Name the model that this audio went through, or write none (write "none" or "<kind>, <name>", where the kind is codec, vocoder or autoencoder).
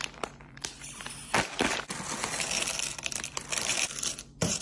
vocoder, BigVGAN v2